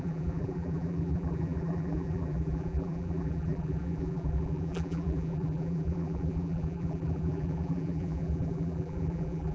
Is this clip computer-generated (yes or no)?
yes